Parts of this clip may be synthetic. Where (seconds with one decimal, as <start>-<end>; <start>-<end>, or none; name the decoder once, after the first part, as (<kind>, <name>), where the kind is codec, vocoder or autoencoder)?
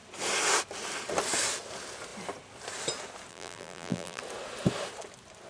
3.3-4.2 (vocoder, BigVGAN v2)